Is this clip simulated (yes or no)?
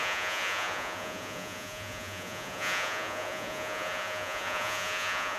yes